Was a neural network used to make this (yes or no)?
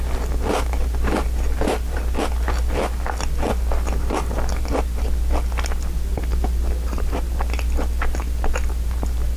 no